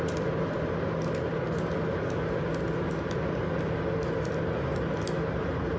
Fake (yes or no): no